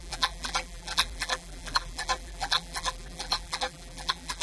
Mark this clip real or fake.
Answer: fake